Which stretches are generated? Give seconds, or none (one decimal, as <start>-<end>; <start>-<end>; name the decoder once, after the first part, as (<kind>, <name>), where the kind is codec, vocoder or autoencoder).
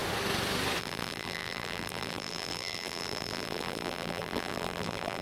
0.8-5.2 (vocoder, BigVGAN v2)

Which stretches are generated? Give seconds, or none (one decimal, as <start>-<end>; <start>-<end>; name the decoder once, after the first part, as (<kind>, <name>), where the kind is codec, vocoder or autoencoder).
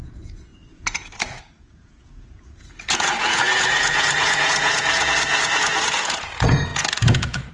0.0-7.5 (vocoder, Vocos)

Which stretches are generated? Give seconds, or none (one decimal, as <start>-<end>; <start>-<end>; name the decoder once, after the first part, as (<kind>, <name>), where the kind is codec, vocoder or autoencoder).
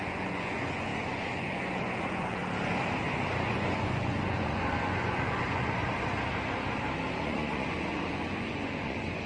0.0-2.4 (vocoder, Vocos); 3.5-5.8; 7.1-9.3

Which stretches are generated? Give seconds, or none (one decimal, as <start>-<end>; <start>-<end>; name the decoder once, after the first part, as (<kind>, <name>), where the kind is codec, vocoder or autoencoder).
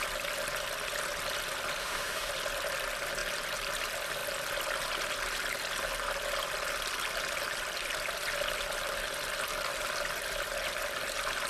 1.8-2.3 (autoencoder, DAC-VAE)